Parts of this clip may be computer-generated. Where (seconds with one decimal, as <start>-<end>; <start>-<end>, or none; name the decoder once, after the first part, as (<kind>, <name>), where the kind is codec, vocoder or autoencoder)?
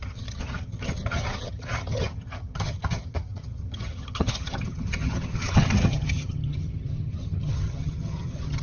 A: 0.0-8.6 (vocoder, HiFi-GAN)